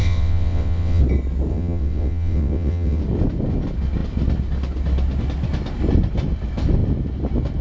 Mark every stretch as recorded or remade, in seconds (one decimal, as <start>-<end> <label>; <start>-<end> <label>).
0.0-1.0 remade; 1.0-1.5 recorded; 1.5-3.0 remade; 3.0-7.6 recorded